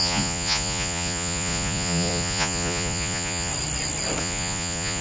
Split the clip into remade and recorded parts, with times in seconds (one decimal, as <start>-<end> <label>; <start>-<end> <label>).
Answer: 0.0-3.5 remade; 3.5-4.2 recorded; 4.2-5.0 remade